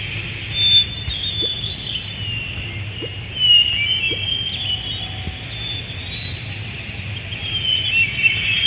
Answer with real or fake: real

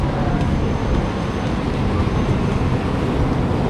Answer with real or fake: real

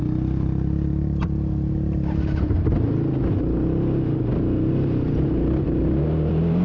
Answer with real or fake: real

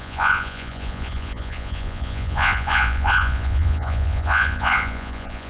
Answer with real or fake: fake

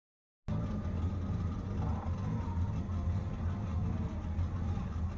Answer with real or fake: real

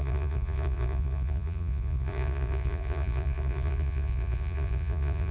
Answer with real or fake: fake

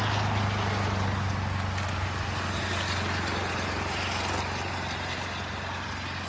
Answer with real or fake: real